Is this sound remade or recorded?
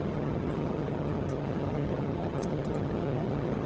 remade